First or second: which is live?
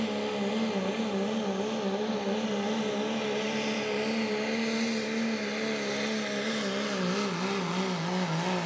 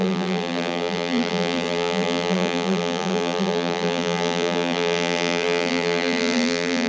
first